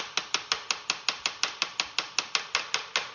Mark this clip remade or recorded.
recorded